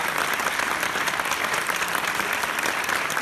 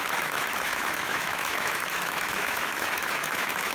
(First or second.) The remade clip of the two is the second